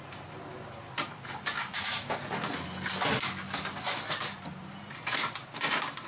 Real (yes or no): yes